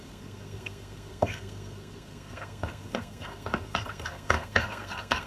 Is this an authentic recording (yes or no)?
no